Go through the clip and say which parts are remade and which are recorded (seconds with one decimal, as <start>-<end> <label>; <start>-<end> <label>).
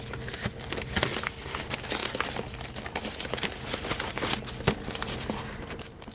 0.0-6.1 recorded